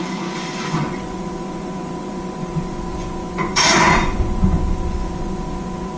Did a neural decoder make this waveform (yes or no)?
yes